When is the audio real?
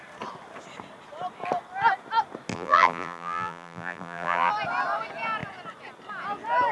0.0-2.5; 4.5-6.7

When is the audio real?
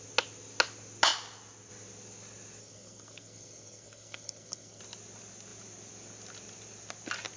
0.0-2.6; 4.8-7.4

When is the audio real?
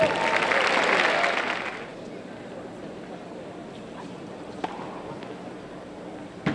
0.0-6.5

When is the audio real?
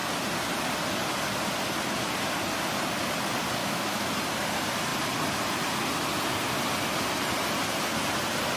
0.0-3.6; 4.1-8.6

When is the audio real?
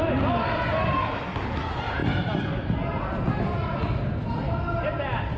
0.0-5.4